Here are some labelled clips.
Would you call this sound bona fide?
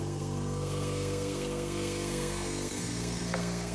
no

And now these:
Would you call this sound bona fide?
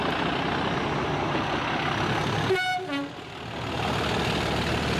yes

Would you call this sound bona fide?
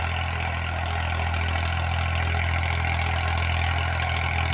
yes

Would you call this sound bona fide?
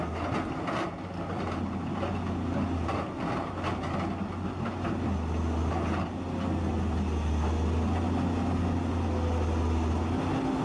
yes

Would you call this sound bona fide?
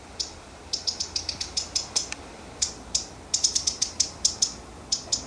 yes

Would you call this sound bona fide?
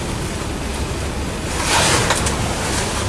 yes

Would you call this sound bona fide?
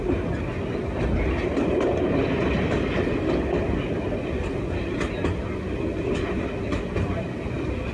yes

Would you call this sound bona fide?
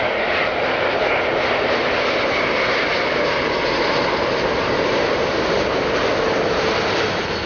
yes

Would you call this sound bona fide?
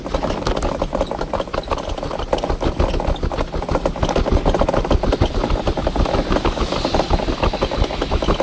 yes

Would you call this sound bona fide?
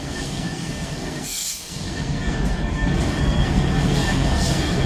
no